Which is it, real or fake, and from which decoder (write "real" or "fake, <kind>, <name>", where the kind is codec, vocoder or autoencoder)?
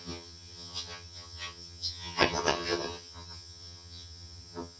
fake, vocoder, HiFi-GAN